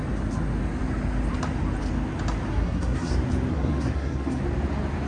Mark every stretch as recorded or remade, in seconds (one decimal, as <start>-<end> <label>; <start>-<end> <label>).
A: 0.0-2.5 recorded; 2.5-3.1 remade; 3.1-3.5 recorded; 3.5-4.4 remade; 4.4-5.1 recorded